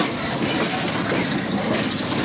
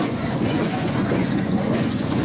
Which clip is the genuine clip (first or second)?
first